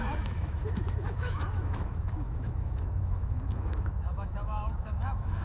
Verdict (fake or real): fake